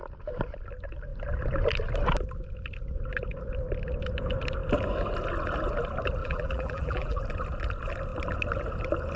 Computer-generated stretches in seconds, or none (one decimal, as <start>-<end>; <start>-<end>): 6.2-7.2